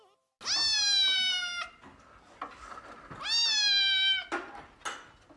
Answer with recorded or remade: recorded